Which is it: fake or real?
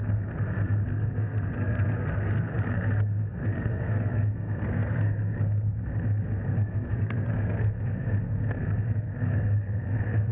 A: fake